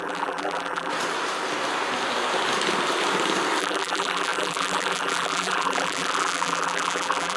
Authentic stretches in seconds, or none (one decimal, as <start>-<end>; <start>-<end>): 0.9-3.6